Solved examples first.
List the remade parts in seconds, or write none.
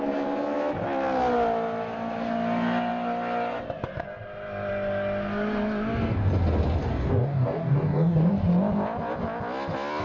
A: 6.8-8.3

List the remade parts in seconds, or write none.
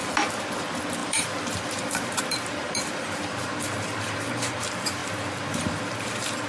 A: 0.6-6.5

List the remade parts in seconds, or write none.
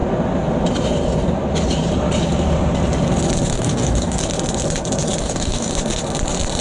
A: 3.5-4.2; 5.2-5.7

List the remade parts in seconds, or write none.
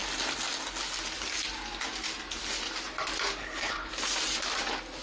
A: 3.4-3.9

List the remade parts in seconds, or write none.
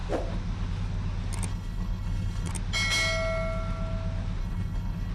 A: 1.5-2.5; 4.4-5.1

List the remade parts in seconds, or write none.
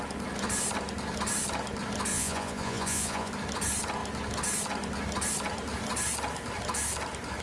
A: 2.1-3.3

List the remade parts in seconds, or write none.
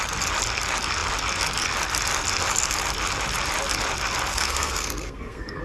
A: 4.3-5.6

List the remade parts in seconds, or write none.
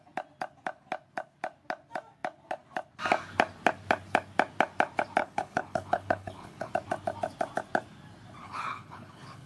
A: 5.2-6.7; 8.4-9.5